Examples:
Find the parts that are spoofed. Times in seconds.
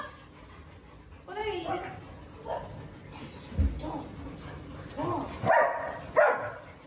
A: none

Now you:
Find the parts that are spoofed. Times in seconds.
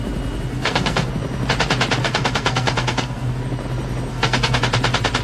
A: 0.5-1.1 (codec, SNAC); 2.0-3.4; 4.1-4.6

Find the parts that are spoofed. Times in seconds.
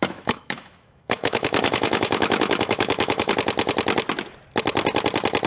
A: 0.0-3.3 (autoencoder, DAC-VAE)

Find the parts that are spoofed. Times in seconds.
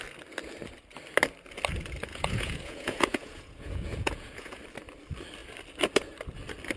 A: 2.1-4.6 (vocoder, Vocos)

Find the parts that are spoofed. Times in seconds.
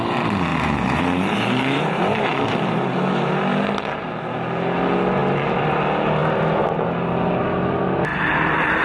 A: 0.5-3.4 (vocoder, BigVGAN v2); 8.1-8.8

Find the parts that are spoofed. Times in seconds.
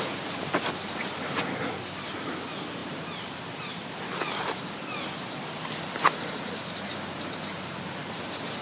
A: none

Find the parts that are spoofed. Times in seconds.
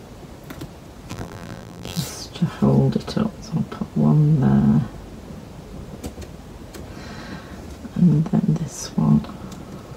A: 1.1-2.0 (vocoder, BigVGAN v2)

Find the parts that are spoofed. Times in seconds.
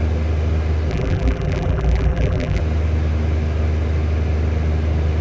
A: 0.9-2.6 (vocoder, BigVGAN v2)